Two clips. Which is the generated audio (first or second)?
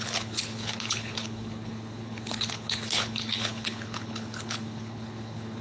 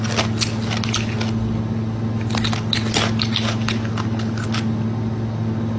first